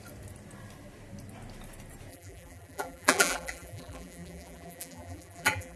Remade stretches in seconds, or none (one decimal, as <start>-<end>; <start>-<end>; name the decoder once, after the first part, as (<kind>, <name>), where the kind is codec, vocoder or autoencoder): 2.1-5.8 (vocoder, BigVGAN v2)